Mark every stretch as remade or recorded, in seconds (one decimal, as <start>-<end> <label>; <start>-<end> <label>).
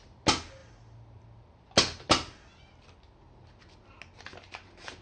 0.0-5.0 recorded